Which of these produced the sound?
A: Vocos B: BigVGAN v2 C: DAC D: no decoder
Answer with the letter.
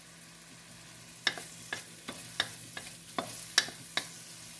D